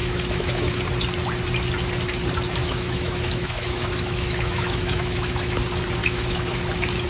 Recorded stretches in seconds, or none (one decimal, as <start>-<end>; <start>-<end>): 0.8-2.6; 5.6-6.0; 6.6-7.1